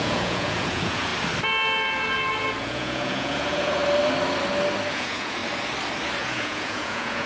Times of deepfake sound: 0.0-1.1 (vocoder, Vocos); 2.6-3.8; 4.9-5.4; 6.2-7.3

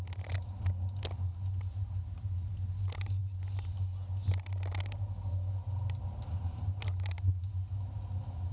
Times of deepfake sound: none

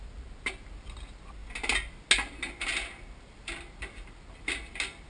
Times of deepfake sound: none

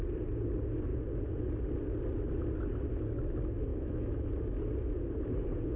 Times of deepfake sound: 3.7-4.3 (autoencoder, DAC-VAE)

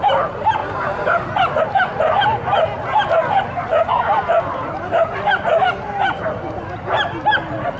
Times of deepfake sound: none